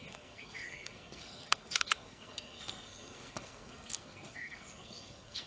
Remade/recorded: remade